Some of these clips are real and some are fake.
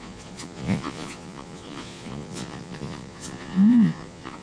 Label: fake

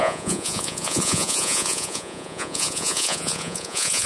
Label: fake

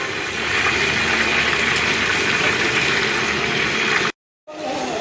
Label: real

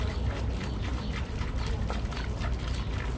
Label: real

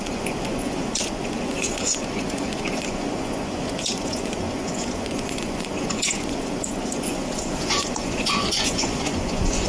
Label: fake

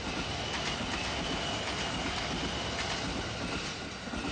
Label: real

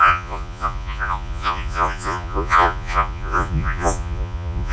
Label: fake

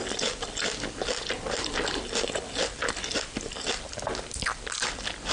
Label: real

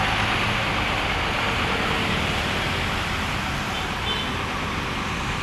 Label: real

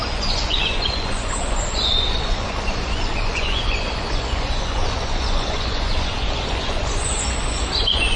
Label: fake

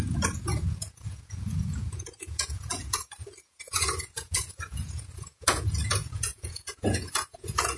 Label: fake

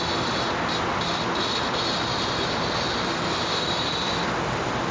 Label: real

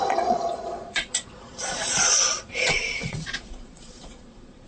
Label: fake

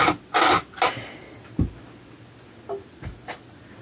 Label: real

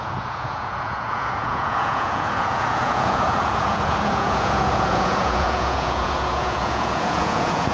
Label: fake